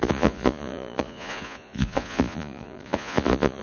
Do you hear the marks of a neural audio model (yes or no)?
yes